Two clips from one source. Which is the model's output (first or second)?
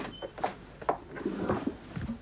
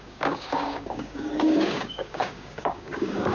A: second